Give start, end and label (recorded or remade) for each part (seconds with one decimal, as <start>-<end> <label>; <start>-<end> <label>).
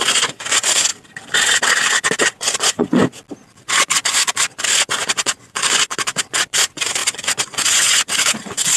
0.0-0.9 remade; 0.9-2.2 recorded; 2.2-3.0 remade; 3.0-3.6 recorded; 3.6-8.8 remade